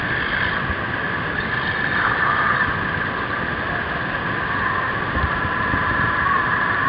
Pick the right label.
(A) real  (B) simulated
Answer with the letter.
A